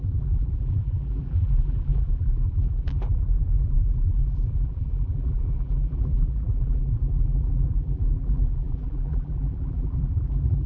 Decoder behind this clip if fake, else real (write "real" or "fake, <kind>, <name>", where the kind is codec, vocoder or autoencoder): fake, vocoder, BigVGAN v2